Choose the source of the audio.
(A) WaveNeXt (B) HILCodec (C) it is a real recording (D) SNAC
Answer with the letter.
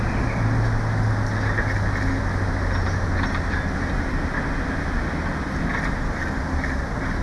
C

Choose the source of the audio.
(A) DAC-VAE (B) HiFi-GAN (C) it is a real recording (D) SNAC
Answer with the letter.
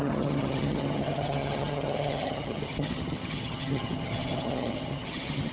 B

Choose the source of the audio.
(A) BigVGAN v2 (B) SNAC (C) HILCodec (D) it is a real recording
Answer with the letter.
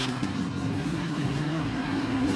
B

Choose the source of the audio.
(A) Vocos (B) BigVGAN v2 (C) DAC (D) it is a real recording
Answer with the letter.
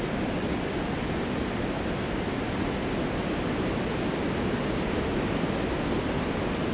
D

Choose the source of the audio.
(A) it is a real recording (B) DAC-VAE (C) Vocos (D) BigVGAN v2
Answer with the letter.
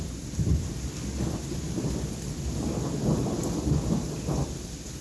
A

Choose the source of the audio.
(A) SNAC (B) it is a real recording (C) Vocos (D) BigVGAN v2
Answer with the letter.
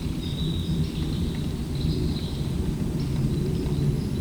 B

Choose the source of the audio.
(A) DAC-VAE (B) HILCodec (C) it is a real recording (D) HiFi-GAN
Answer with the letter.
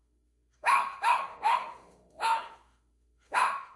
A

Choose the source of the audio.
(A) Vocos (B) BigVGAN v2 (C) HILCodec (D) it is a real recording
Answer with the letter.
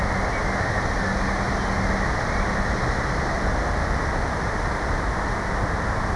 D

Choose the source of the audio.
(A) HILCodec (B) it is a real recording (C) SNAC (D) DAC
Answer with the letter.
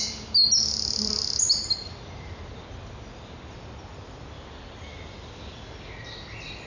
B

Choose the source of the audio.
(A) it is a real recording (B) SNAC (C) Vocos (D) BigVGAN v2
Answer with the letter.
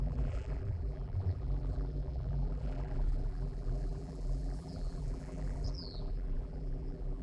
D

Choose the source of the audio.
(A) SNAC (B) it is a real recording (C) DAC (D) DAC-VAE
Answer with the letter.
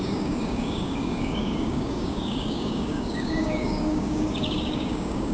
C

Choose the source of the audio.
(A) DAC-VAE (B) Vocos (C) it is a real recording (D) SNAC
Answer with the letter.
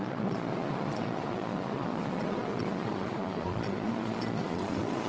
B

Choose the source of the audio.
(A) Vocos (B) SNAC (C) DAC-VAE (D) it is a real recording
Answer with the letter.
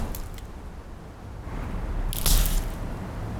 D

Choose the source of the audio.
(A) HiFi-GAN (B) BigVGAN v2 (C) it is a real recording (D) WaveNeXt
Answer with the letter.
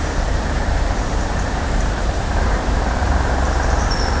B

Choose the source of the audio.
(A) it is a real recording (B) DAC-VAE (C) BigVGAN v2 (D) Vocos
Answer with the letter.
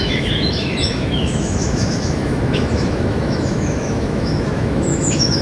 B